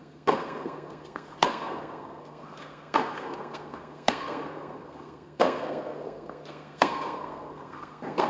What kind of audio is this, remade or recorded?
remade